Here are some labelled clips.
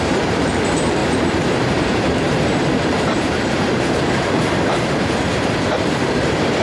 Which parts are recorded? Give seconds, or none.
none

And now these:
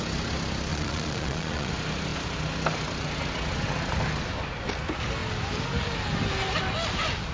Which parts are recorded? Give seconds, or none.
0.0-0.7; 1.7-7.3

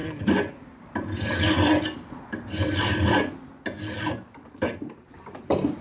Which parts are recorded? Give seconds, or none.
0.0-5.8